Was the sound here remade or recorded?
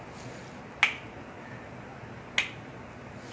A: recorded